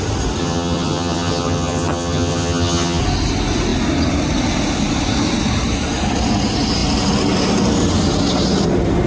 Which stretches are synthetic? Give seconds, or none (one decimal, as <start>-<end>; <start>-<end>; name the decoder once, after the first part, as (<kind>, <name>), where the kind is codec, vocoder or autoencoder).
0.4-3.0 (vocoder, HiFi-GAN)